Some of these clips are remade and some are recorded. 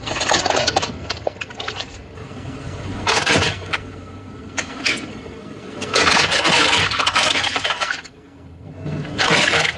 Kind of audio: remade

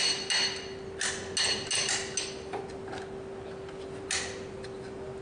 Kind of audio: recorded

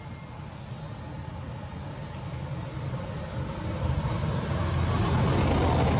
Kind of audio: recorded